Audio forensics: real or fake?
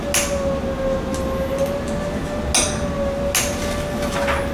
real